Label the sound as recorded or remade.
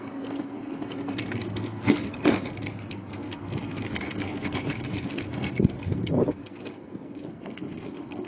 remade